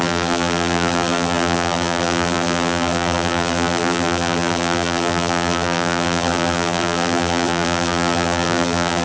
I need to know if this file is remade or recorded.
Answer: remade